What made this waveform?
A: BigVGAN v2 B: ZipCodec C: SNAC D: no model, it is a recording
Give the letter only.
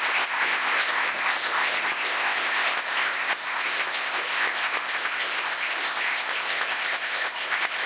B